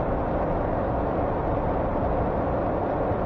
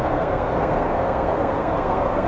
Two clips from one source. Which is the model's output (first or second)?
second